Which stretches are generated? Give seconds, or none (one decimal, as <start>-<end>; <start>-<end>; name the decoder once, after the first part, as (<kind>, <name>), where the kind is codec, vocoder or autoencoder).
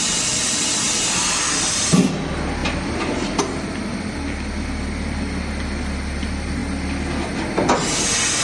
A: none